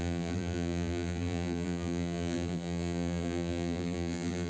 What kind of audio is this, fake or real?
fake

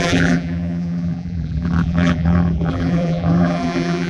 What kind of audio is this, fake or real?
fake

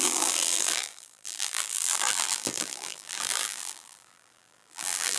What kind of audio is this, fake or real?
fake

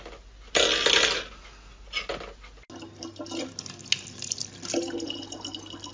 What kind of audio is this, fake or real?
real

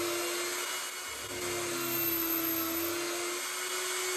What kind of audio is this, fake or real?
real